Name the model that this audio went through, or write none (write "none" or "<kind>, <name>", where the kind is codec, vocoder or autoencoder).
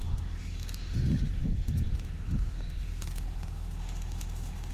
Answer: autoencoder, DAC-VAE